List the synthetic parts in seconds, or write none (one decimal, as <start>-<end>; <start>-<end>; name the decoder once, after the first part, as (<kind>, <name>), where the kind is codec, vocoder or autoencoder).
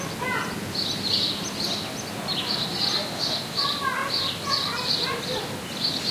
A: none